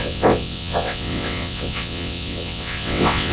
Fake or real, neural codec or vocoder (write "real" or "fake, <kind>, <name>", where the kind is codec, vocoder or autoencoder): fake, vocoder, WaveNeXt